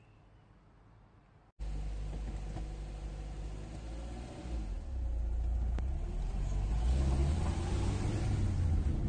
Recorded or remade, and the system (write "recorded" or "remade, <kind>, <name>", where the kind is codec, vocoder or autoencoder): recorded